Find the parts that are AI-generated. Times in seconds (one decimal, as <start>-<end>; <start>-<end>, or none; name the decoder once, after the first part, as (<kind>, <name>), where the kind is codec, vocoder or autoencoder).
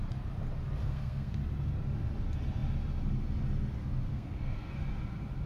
0.8-1.4 (codec, SNAC); 4.1-4.7